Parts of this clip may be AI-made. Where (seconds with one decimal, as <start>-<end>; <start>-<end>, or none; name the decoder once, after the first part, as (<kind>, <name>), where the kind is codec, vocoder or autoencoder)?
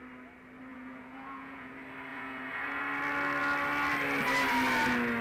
0.7-1.7 (vocoder, Vocos); 2.1-2.8